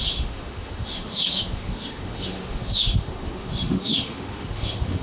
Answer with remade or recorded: remade